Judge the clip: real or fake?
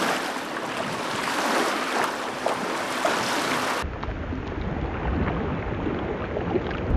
real